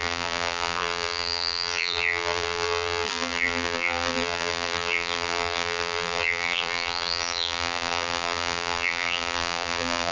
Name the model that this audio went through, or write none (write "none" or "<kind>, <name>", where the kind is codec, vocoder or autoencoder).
vocoder, BigVGAN v2